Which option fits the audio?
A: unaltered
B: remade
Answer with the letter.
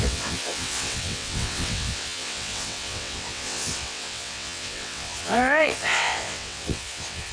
B